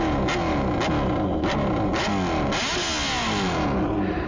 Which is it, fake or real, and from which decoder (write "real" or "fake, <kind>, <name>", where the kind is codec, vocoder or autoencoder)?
real